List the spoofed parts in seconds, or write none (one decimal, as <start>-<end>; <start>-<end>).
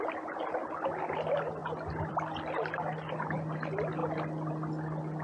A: none